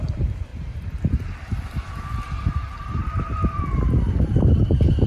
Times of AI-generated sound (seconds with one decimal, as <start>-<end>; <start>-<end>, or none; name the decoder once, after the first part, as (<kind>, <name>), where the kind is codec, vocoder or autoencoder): 0.0-5.1 (vocoder, BigVGAN v2)